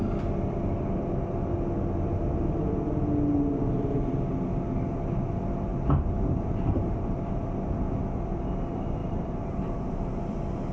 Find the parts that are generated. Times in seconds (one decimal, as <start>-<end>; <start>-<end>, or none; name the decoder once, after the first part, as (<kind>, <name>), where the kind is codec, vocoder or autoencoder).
5.7-7.3 (vocoder, BigVGAN v2); 9.0-10.1

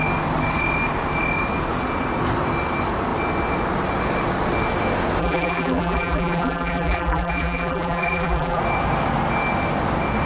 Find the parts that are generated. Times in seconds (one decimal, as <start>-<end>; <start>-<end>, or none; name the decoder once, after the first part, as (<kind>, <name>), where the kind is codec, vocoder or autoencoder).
5.2-8.6 (vocoder, BigVGAN v2)

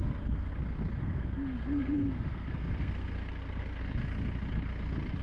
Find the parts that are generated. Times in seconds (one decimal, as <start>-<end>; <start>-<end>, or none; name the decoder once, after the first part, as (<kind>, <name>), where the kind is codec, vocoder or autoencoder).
0.0-0.5 (codec, SNAC); 1.0-3.8

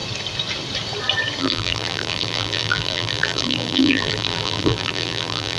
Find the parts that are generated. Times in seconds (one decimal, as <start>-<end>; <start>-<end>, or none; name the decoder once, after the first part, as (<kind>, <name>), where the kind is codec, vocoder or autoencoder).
1.4-5.6 (vocoder, BigVGAN v2)

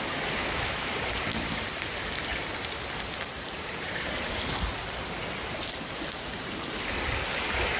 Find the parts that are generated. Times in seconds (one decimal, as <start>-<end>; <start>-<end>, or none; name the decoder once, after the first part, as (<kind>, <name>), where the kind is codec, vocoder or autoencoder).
0.4-0.9 (autoencoder, DAC-VAE)